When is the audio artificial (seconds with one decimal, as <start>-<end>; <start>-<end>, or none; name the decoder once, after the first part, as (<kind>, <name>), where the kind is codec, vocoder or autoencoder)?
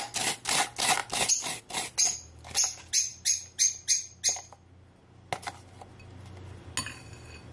none